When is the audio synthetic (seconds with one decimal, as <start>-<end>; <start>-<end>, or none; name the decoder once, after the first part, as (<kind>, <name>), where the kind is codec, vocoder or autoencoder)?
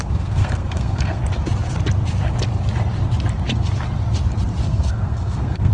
0.0-1.2 (codec, SNAC); 4.6-5.7